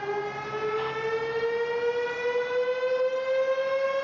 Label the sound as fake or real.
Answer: real